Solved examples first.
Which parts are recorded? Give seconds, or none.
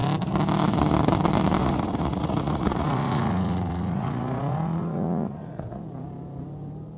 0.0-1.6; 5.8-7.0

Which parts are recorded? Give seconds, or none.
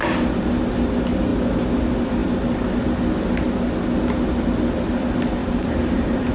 0.0-5.4